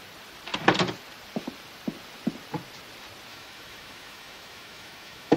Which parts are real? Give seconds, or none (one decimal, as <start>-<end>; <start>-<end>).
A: 0.0-3.3